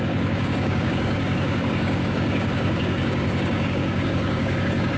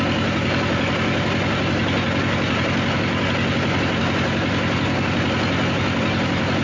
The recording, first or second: second